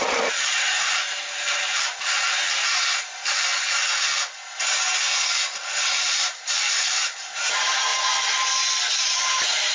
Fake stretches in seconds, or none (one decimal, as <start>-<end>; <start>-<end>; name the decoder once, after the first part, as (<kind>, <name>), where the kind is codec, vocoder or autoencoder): 0.0-3.5 (vocoder, BigVGAN v2); 5.9-7.9; 9.0-9.7